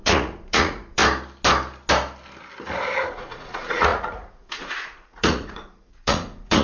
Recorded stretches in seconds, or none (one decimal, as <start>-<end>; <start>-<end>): 1.0-3.1